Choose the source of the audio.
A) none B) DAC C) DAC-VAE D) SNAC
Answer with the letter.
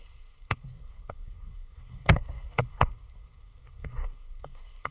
D